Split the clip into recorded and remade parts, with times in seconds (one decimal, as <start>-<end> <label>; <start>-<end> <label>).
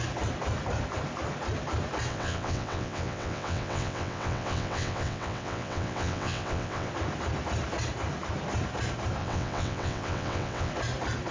0.0-2.1 recorded; 2.1-6.9 remade; 6.9-9.2 recorded; 9.2-10.7 remade; 10.7-11.3 recorded